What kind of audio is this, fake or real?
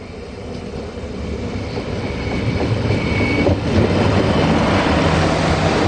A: real